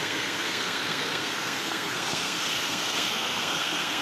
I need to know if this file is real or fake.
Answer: fake